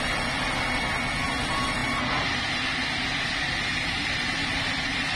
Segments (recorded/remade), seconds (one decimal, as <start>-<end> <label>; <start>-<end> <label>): 0.0-5.2 recorded